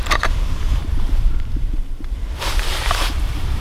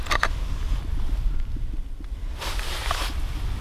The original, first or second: second